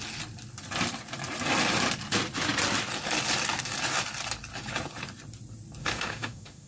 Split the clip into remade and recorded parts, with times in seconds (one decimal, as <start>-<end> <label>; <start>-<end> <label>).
0.0-5.8 recorded; 5.8-6.7 remade

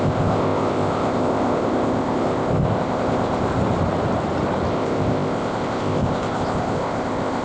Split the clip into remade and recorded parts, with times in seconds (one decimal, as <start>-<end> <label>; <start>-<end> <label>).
0.0-3.5 remade; 3.5-4.7 recorded; 4.7-7.4 remade

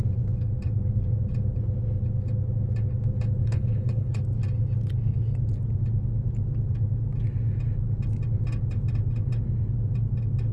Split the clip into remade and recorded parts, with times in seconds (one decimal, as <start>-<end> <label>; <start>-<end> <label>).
0.0-3.4 recorded; 3.4-4.2 remade; 4.2-10.5 recorded

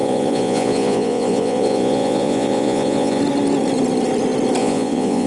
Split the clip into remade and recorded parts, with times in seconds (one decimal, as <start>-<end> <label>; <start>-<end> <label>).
0.0-3.2 remade; 3.2-4.6 recorded; 4.6-5.3 remade